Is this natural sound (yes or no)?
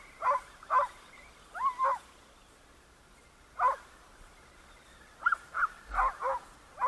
yes